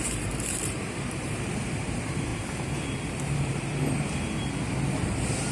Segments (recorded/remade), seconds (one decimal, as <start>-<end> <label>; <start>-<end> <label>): 0.0-2.3 remade; 2.3-3.0 recorded; 3.0-3.7 remade; 3.7-5.0 recorded; 5.0-5.5 remade